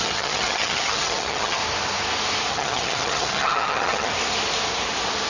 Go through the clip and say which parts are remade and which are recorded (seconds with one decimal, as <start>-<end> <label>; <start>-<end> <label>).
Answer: 0.0-1.6 remade; 1.6-2.5 recorded; 2.5-4.1 remade; 4.1-5.3 recorded